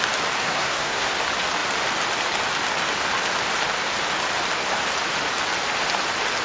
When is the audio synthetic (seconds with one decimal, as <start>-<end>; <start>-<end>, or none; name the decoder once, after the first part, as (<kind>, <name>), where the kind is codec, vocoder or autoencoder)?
0.4-1.1 (codec, SNAC)